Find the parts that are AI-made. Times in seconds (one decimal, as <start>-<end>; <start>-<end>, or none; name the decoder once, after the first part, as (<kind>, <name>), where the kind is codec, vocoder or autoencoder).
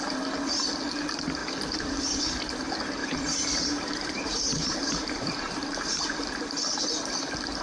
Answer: 1.4-2.2 (vocoder, BigVGAN v2); 3.0-6.4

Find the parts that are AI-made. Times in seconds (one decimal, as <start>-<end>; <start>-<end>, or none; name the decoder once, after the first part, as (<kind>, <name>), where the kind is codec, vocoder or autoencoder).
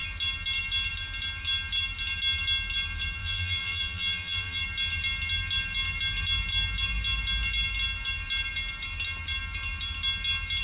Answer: 3.2-4.6 (vocoder, BigVGAN v2)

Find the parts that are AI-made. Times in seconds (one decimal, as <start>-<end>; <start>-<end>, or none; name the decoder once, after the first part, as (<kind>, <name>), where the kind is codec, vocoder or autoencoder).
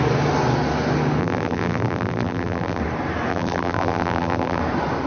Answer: 1.2-2.8 (vocoder, BigVGAN v2); 3.3-4.6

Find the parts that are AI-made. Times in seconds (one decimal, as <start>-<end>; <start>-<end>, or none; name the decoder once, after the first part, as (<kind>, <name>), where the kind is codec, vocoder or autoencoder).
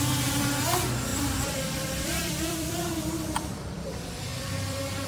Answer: 1.1-3.8 (vocoder, BigVGAN v2); 4.3-5.1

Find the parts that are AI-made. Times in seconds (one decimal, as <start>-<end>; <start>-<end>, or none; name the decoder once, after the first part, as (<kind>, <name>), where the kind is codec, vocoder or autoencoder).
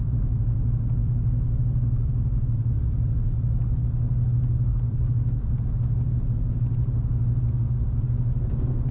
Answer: none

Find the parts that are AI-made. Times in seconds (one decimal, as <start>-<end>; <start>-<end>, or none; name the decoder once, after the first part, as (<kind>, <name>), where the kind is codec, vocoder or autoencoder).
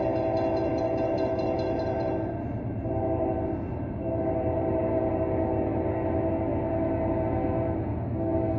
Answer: 0.7-4.8 (vocoder, BigVGAN v2)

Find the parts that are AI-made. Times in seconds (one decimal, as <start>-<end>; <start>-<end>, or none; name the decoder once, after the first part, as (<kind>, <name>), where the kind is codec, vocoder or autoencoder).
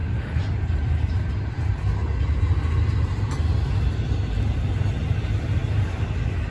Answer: 0.0-1.6 (vocoder, BigVGAN v2)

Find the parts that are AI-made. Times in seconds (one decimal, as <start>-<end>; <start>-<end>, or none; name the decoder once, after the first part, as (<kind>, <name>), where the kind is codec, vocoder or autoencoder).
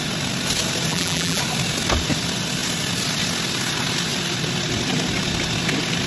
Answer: 0.9-1.4 (vocoder, BigVGAN v2)